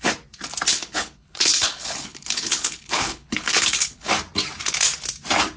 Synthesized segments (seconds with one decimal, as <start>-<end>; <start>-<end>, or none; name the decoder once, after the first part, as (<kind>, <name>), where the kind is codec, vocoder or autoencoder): 0.7-4.1 (codec, HILCodec)